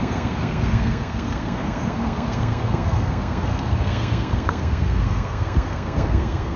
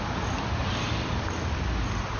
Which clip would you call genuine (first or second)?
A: second